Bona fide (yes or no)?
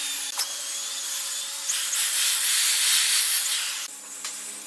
yes